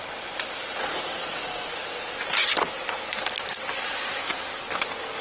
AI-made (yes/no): no